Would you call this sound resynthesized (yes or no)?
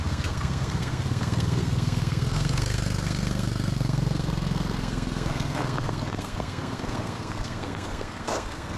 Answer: yes